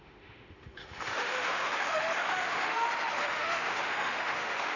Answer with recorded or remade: remade